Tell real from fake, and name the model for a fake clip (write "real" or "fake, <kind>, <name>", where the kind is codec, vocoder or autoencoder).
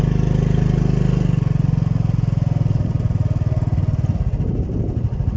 real